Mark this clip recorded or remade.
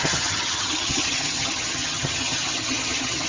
remade